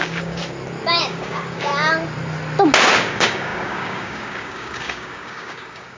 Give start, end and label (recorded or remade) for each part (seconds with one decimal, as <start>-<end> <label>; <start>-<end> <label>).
0.0-0.4 remade; 0.4-1.0 recorded; 1.0-1.7 remade; 1.7-3.1 recorded; 3.1-6.0 remade